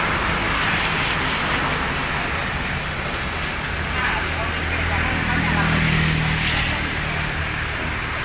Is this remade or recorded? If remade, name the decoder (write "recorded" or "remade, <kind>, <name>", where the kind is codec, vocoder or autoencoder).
recorded